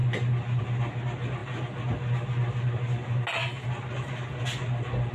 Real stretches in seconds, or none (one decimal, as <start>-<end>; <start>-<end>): 0.0-5.1